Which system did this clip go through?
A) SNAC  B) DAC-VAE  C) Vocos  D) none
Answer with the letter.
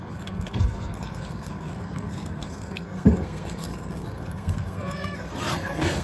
A